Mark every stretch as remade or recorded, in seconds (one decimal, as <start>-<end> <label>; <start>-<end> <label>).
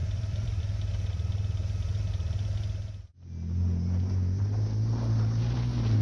0.0-0.6 remade; 0.6-6.0 recorded